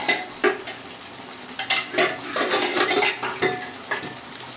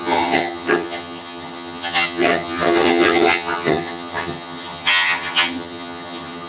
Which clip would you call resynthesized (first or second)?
second